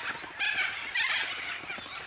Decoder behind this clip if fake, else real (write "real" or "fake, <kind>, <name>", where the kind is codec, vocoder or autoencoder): real